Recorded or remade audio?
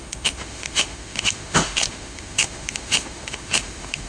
remade